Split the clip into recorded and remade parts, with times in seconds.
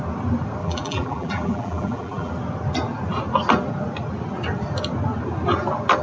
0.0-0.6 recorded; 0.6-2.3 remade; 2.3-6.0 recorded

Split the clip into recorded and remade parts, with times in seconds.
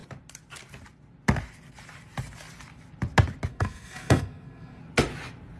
0.0-3.5 recorded; 3.5-4.8 remade; 4.8-5.6 recorded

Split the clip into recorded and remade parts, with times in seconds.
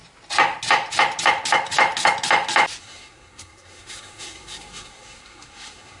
0.0-2.8 recorded; 2.8-6.0 remade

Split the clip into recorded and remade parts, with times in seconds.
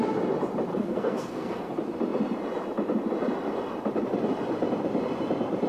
0.0-0.7 recorded; 0.7-1.7 remade; 1.7-5.7 recorded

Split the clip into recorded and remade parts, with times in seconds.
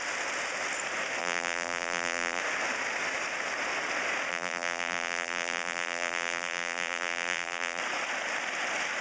0.0-1.2 recorded; 1.2-2.4 remade; 2.4-4.3 recorded; 4.3-7.8 remade; 7.8-9.0 recorded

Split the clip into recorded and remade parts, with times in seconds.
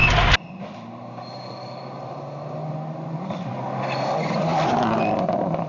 0.0-5.7 recorded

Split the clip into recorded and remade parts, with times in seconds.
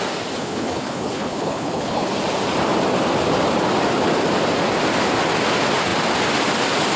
0.0-0.4 recorded; 0.4-2.1 remade; 2.1-7.0 recorded